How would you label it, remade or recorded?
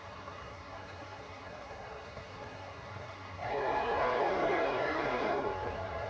remade